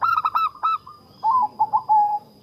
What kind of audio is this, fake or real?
fake